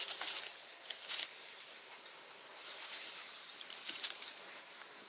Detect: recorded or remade remade